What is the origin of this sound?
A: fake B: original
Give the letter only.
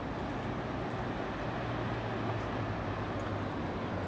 B